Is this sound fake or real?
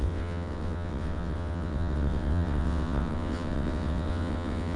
fake